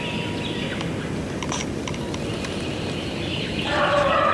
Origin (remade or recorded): recorded